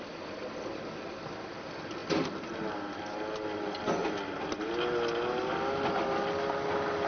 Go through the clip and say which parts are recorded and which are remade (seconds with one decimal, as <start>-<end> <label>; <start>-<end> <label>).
0.0-7.1 recorded